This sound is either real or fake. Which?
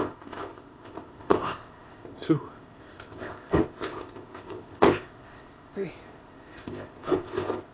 fake